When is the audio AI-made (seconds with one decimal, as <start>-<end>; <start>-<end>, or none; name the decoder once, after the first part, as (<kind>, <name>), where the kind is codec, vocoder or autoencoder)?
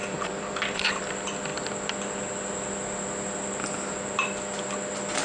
0.0-1.0 (vocoder, BigVGAN v2)